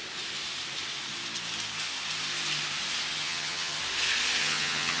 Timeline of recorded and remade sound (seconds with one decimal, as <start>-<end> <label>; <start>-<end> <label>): 0.0-3.1 recorded; 3.1-3.8 remade; 3.8-4.4 recorded; 4.4-5.0 remade